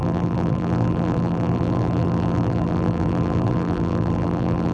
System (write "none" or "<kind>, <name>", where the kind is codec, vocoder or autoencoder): vocoder, BigVGAN v2